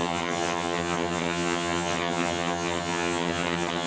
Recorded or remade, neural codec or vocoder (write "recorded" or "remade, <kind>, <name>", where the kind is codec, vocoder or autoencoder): remade, vocoder, HiFi-GAN